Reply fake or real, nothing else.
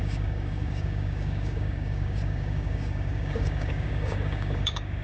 fake